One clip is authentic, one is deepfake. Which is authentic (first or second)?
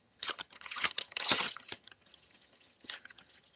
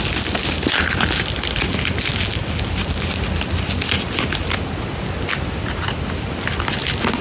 second